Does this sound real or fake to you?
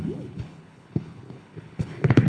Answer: fake